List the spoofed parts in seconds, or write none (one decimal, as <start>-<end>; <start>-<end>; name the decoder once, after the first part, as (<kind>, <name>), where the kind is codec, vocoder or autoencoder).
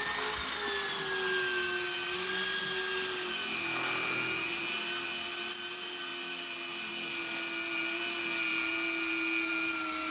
none